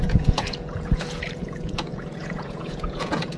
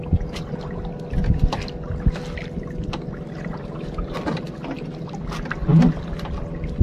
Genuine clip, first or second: second